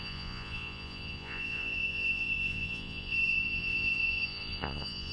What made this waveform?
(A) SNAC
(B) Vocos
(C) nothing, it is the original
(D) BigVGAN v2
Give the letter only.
B